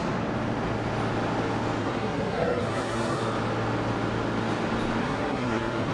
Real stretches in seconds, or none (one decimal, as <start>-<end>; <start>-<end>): 0.0-1.8; 3.2-5.0